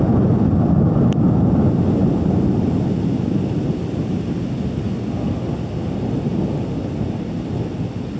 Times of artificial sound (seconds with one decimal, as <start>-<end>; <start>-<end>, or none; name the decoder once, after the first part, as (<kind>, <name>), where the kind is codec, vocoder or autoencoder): none